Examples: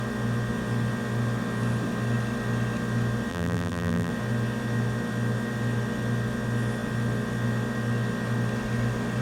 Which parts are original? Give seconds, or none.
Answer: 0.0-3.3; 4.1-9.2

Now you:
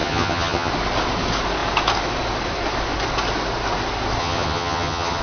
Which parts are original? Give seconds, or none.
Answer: 0.7-4.2

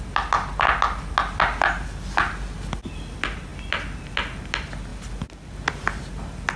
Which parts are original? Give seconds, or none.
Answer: 0.0-6.6